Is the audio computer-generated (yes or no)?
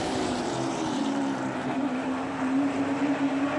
yes